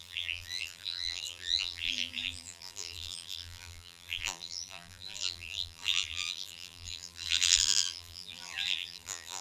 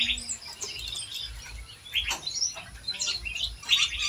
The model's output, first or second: first